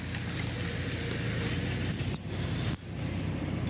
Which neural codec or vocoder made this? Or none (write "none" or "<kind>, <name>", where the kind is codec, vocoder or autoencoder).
none